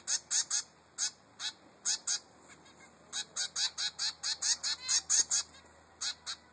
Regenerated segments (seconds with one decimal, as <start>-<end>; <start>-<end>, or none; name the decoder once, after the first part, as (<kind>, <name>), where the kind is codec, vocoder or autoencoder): none